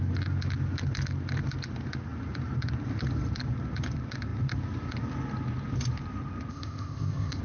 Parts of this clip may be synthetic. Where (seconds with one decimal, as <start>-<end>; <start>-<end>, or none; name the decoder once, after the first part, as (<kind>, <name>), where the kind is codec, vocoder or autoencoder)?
6.5-7.4 (codec, ZipCodec)